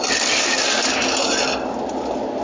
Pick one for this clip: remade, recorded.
recorded